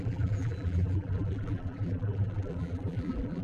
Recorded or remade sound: remade